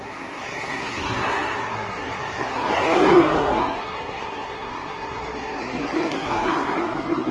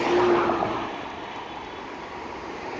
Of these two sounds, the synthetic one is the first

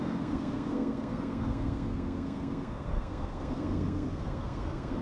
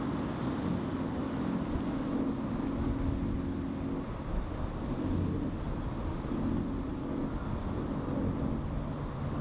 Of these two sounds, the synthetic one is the first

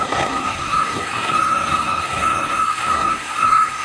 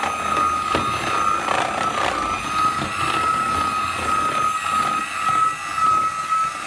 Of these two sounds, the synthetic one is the first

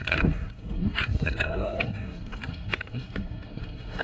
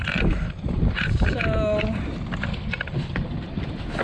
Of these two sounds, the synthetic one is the first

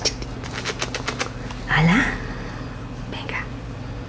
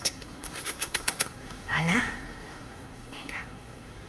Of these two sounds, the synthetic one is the second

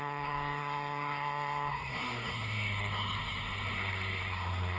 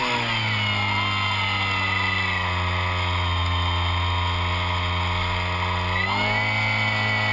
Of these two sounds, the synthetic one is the first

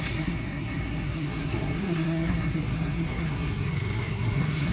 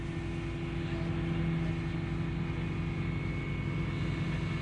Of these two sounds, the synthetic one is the first